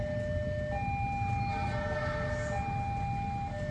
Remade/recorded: recorded